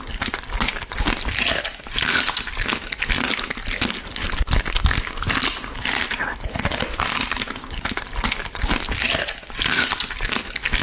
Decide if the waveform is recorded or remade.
recorded